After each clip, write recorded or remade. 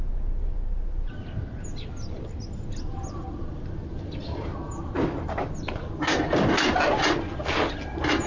recorded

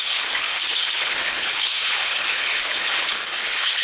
remade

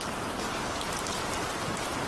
remade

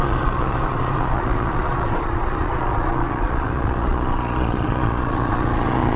remade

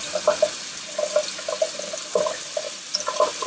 recorded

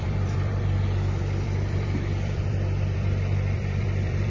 remade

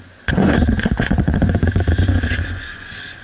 remade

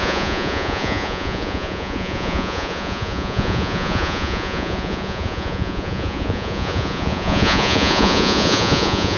remade